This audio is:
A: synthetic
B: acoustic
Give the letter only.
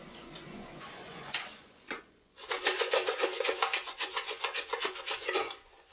A